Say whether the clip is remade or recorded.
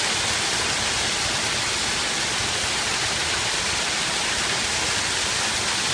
recorded